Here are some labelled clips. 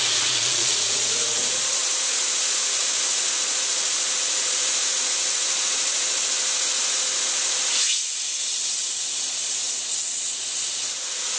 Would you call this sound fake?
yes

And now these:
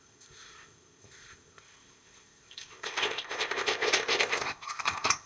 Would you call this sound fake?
yes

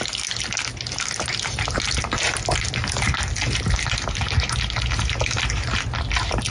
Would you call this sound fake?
no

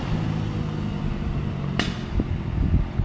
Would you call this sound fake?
no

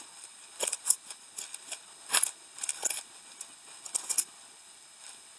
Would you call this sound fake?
yes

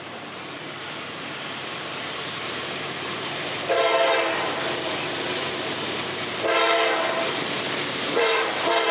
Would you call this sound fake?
yes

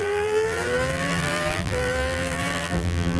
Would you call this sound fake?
yes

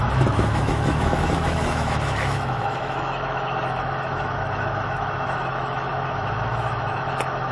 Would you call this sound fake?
yes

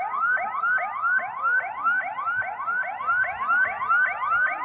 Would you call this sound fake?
no